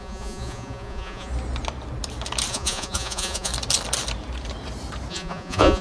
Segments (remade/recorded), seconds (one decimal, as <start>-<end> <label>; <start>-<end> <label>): 0.0-1.3 remade; 1.3-2.5 recorded; 2.5-3.5 remade; 3.5-5.1 recorded; 5.1-5.8 remade